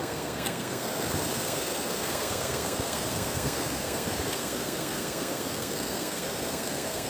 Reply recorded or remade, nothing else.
remade